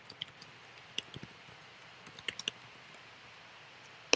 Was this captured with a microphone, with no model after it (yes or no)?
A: yes